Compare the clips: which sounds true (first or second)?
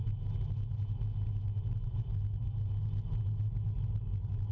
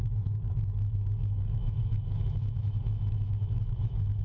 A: first